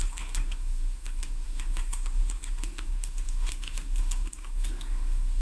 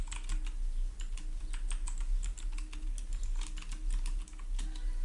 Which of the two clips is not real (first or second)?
first